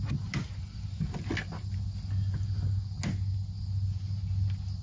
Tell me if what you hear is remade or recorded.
recorded